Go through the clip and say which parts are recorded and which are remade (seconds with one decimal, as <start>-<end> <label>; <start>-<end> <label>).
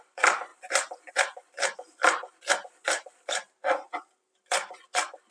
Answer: 0.0-0.5 remade; 0.5-3.7 recorded; 3.7-5.3 remade